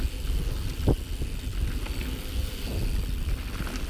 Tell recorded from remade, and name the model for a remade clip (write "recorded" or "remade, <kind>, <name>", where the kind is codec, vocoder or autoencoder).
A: recorded